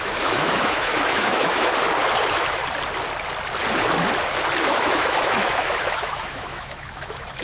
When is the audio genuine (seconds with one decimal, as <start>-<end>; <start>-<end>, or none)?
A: 1.7-2.2; 2.6-4.6